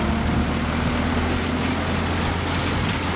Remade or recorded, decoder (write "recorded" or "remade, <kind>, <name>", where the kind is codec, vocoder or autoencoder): recorded